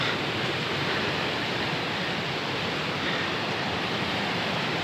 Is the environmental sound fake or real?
fake